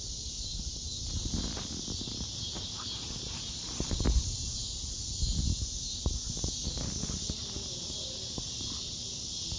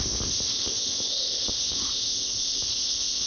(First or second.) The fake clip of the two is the second